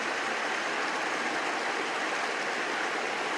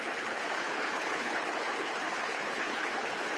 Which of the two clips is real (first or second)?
first